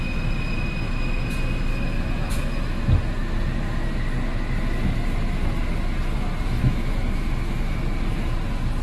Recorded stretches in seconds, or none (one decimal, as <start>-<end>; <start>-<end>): 0.0-1.7; 2.8-6.6; 7.8-8.8